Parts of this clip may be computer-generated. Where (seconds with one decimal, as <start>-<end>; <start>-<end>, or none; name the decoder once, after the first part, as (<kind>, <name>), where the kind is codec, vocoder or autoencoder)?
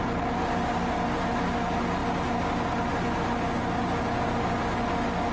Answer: none